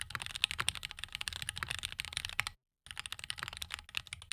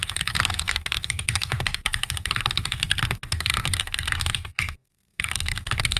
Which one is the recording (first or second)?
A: first